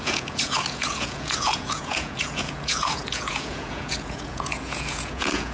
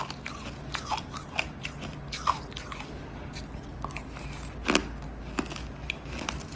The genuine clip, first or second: second